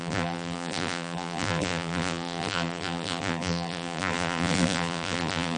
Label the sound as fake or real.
fake